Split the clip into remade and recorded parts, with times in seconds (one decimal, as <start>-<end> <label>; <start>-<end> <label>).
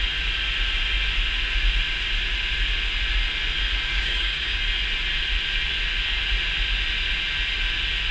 0.0-3.9 recorded; 3.9-4.6 remade; 4.6-8.1 recorded